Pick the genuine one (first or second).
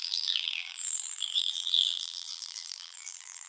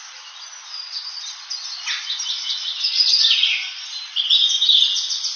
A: second